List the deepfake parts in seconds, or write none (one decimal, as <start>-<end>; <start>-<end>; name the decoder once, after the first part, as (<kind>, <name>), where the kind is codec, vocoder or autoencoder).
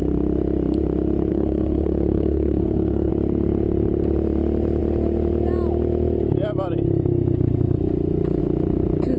1.3-3.1 (codec, SNAC)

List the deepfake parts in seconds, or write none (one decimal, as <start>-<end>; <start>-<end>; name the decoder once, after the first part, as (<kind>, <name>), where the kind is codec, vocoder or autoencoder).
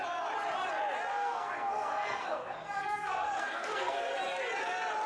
1.1-4.2 (codec, SNAC)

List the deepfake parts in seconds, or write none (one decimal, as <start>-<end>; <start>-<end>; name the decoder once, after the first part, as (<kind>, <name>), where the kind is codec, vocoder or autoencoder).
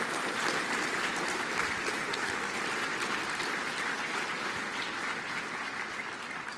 2.1-2.6 (codec, SNAC)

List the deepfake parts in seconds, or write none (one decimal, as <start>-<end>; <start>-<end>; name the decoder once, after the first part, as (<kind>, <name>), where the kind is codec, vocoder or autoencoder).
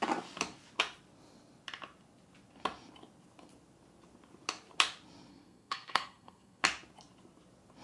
5.3-6.6 (codec, SNAC)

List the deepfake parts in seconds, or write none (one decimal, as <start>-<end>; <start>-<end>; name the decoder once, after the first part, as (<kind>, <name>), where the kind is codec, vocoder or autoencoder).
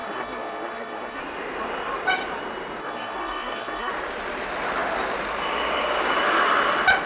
0.0-1.2 (codec, SNAC); 2.8-3.9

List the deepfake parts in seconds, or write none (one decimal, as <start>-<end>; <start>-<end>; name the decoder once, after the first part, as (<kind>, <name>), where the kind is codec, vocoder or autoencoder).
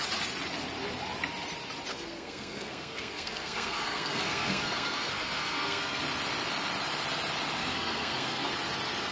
1.9-6.0 (codec, SNAC); 7.6-8.5